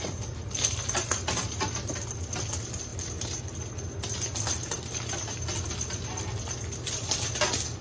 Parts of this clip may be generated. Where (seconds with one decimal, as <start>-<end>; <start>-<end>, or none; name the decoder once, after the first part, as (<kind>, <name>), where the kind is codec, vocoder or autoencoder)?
none